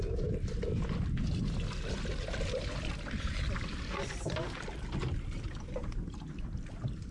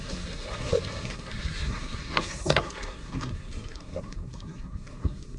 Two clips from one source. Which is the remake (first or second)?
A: second